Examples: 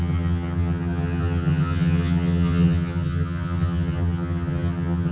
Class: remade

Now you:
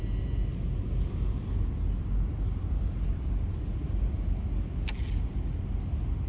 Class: recorded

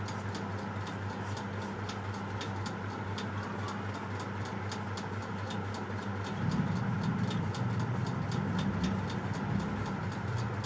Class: recorded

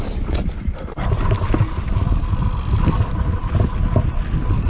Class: recorded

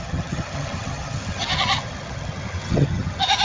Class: remade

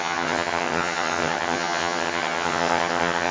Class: remade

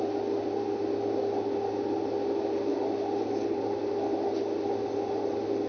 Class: recorded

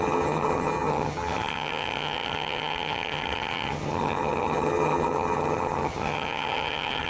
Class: remade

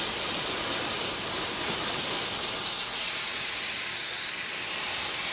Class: recorded